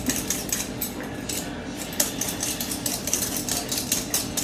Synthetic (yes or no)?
no